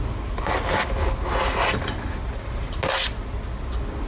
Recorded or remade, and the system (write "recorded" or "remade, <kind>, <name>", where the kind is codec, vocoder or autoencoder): recorded